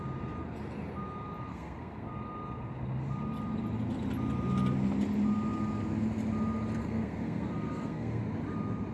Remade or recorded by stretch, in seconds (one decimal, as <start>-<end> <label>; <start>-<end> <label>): 0.0-1.5 recorded; 1.5-2.1 remade; 2.1-6.8 recorded; 6.8-8.2 remade; 8.2-8.9 recorded